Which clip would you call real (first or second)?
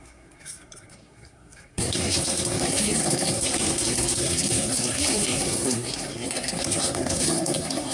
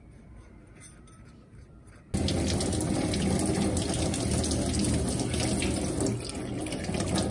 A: second